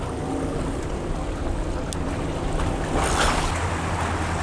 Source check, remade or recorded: recorded